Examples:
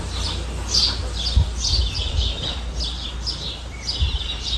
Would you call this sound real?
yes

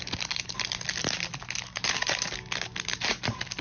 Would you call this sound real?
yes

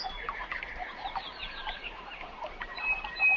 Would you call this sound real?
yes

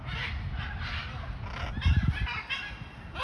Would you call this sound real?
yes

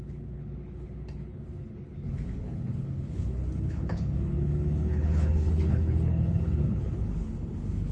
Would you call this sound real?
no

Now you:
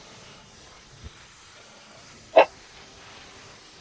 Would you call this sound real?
no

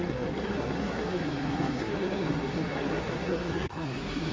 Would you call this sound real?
no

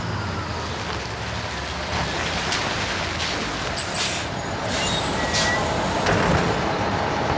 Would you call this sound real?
yes